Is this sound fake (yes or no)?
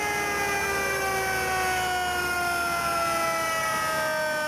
no